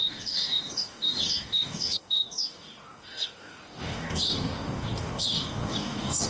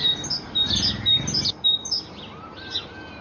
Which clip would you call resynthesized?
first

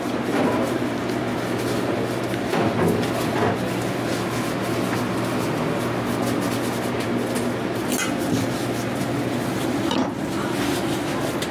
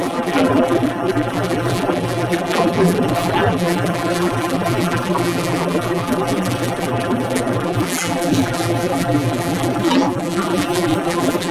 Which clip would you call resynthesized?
second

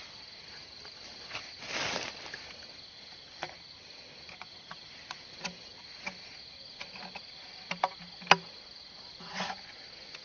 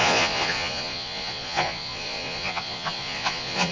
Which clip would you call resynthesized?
second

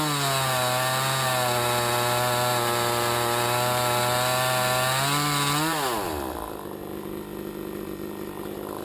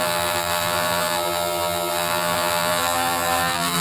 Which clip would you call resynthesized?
second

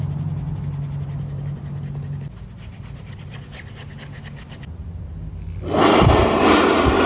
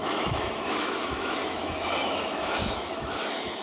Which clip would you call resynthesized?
second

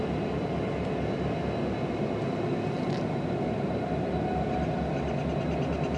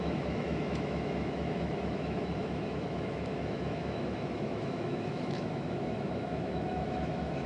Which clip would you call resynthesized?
second